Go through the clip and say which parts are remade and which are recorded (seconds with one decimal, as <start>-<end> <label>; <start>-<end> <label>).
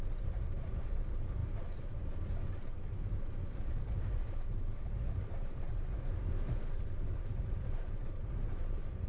0.0-9.1 remade